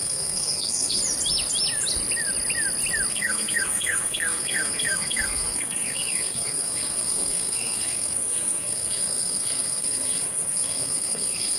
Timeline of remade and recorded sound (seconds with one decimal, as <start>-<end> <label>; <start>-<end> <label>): 0.0-1.0 remade; 1.0-3.1 recorded; 3.1-11.6 remade